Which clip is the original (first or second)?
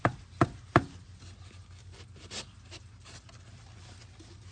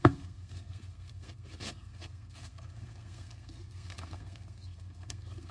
first